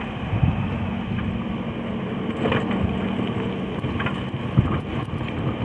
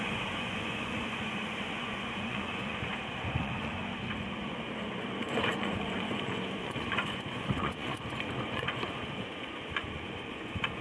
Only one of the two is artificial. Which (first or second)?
second